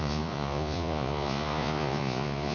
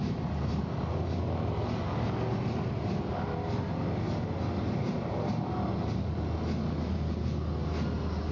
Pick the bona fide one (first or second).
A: second